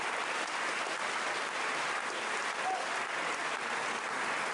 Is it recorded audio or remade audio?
recorded